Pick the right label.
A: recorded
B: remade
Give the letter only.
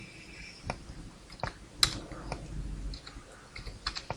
A